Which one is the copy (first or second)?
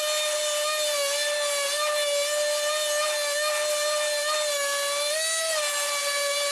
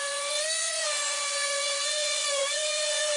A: second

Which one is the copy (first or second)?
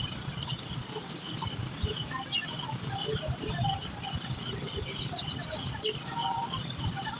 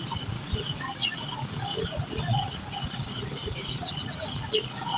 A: second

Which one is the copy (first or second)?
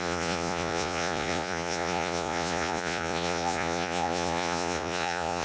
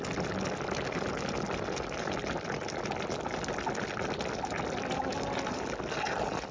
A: first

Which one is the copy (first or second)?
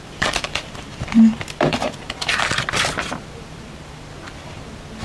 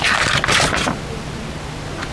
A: first